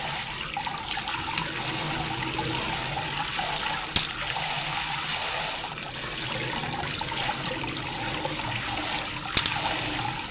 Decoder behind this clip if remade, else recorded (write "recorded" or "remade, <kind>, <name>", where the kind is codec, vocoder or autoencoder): recorded